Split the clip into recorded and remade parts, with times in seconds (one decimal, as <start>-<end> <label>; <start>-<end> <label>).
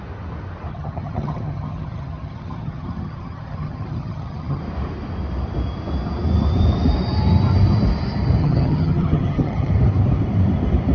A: 0.0-0.7 recorded; 0.7-4.6 remade; 4.6-8.4 recorded; 8.4-9.7 remade; 9.7-10.9 recorded